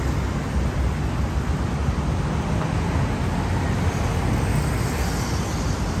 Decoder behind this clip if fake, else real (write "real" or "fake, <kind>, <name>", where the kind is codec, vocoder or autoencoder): real